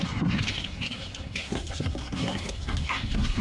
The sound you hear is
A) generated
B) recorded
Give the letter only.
A